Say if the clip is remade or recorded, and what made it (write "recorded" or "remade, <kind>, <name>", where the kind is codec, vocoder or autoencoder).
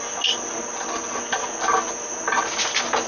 recorded